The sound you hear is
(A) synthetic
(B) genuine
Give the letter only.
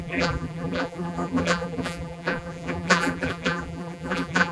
A